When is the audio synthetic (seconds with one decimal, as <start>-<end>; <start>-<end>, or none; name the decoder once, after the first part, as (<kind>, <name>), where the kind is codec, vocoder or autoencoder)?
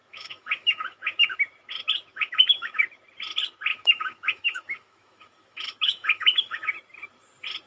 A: 0.0-1.4 (autoencoder, DAC-VAE); 2.1-2.8; 3.7-6.7